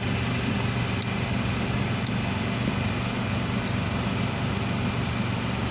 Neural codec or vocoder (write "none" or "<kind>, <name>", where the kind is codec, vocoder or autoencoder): none